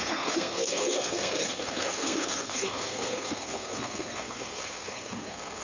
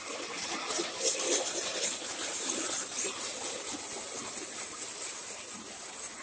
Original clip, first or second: second